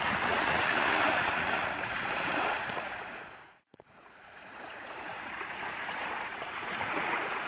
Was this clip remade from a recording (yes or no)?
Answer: yes